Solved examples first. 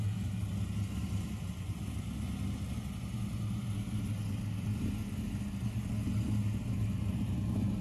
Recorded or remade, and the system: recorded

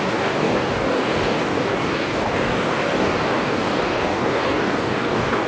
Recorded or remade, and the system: remade, codec, DAC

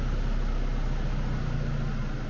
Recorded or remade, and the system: recorded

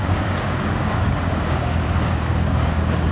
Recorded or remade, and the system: remade, codec, DAC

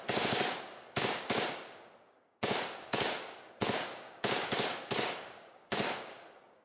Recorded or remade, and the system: remade, codec, DAC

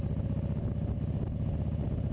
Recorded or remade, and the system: recorded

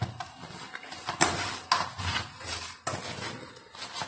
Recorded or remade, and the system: recorded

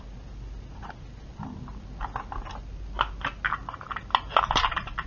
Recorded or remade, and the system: recorded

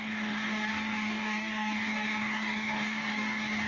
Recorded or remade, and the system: remade, codec, DAC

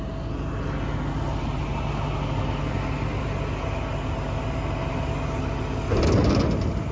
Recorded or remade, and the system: recorded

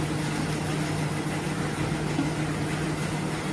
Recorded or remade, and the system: recorded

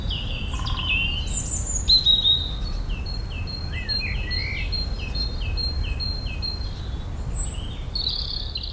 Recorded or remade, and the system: recorded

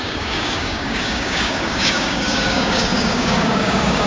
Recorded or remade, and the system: remade, codec, DAC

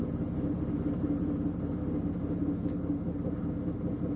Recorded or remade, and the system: recorded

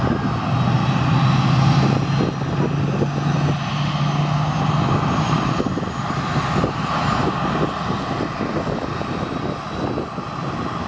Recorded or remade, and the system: recorded